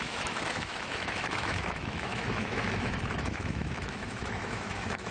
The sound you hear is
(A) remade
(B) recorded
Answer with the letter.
A